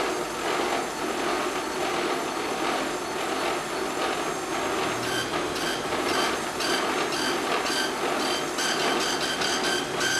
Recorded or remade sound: recorded